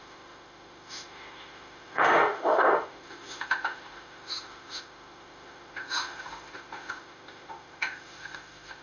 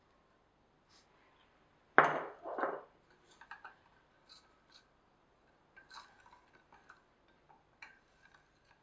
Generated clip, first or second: first